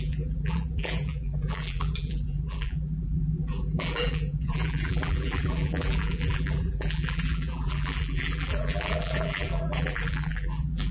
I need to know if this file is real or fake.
fake